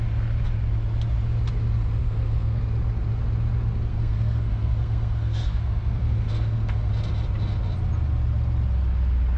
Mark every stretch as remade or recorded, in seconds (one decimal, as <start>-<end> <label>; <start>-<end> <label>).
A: 0.0-2.0 recorded; 2.0-2.6 remade; 2.6-3.9 recorded; 3.9-6.9 remade; 6.9-9.4 recorded